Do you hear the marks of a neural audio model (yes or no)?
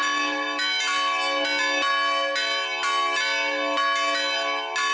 no